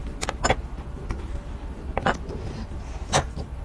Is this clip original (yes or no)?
yes